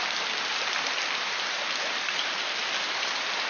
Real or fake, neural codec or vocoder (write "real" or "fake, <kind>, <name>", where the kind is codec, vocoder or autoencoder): real